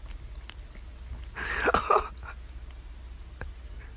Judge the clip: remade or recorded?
recorded